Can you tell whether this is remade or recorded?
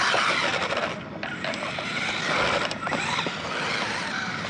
recorded